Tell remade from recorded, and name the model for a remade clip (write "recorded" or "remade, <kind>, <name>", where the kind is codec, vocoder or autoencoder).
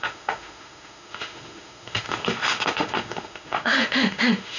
remade, autoencoder, DAC-VAE